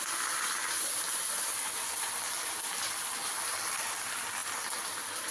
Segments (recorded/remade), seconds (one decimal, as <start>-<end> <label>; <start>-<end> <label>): 0.0-5.3 recorded